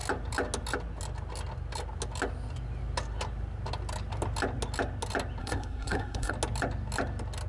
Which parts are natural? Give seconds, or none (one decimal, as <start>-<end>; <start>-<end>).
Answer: 0.0-5.4; 6.3-7.5